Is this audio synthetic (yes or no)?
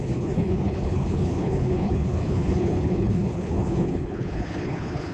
yes